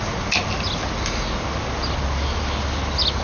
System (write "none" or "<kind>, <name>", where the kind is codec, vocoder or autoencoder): none